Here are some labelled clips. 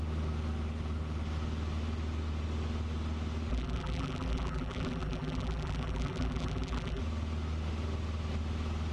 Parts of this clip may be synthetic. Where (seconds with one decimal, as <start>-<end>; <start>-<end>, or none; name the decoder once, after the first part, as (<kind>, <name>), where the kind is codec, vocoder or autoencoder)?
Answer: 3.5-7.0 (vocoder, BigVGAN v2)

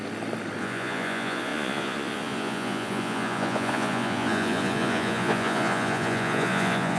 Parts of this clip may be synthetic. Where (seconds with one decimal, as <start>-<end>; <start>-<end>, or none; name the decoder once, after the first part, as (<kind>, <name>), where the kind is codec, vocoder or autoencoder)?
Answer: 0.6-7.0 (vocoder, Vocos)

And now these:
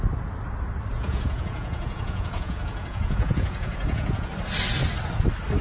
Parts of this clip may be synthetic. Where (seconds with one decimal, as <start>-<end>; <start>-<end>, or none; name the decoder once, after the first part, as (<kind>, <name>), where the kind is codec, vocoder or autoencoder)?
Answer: 0.9-4.3 (vocoder, Vocos)

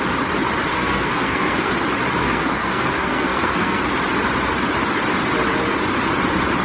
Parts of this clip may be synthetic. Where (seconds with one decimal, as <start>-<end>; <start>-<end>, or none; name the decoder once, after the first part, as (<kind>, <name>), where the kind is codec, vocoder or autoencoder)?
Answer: 0.7-1.7 (codec, SNAC); 2.2-3.8

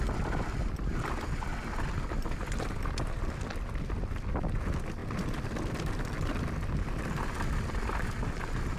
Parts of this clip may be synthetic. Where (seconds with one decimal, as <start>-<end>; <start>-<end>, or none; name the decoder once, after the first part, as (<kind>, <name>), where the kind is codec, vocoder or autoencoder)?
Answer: none

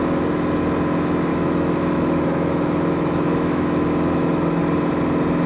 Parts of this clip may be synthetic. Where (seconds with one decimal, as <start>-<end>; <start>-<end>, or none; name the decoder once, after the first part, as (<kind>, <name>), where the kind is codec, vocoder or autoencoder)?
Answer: 1.3-4.6 (autoencoder, DAC-VAE)